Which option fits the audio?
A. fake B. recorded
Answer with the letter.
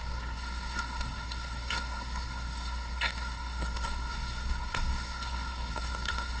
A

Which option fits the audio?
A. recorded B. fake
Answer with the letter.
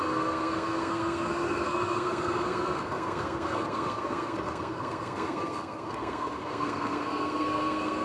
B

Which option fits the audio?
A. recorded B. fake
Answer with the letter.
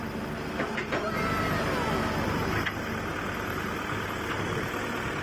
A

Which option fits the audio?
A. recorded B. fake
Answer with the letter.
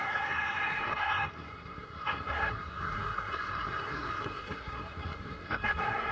B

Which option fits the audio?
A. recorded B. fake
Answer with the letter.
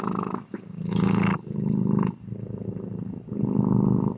A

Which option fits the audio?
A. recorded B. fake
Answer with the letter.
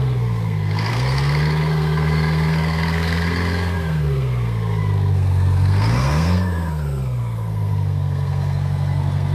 B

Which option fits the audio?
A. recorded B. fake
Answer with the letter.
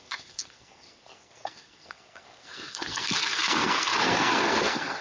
B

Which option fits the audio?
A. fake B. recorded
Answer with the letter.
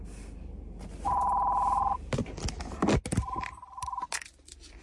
B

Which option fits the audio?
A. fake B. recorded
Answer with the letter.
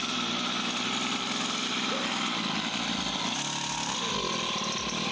B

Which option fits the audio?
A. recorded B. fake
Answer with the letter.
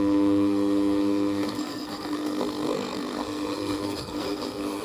B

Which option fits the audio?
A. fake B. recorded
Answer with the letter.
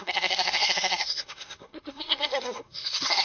A